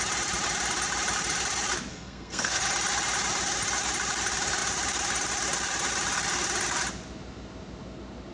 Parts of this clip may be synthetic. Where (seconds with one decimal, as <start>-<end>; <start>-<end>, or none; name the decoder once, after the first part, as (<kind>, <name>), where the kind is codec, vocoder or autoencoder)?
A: 1.9-2.6 (codec, SNAC)